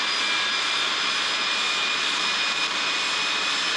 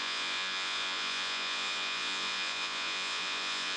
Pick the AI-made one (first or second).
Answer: second